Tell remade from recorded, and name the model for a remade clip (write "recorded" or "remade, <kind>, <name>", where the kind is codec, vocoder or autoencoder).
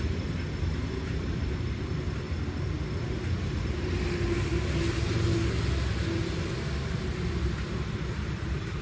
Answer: recorded